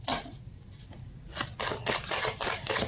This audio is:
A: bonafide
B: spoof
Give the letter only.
A